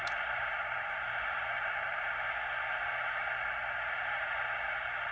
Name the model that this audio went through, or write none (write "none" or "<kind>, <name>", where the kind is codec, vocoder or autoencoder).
vocoder, BigVGAN v2